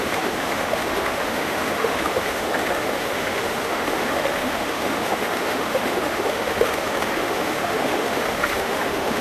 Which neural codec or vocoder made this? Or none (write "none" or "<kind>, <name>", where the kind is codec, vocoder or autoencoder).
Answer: autoencoder, DAC-VAE